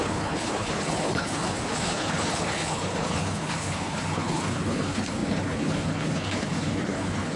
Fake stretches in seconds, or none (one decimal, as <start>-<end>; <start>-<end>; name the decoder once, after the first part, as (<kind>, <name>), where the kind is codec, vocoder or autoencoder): 0.0-7.4 (codec, HILCodec)